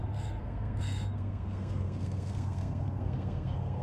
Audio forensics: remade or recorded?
remade